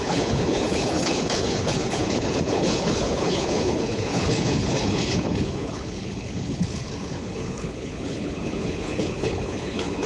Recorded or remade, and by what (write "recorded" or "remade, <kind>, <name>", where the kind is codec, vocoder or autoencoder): remade, codec, HILCodec